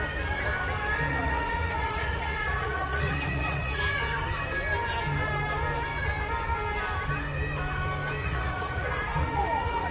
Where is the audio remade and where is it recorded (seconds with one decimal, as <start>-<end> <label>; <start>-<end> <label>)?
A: 0.0-1.1 recorded; 1.1-3.8 remade; 3.8-8.2 recorded; 8.2-9.9 remade